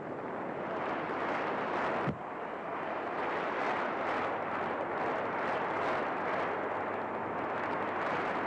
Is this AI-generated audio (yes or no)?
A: no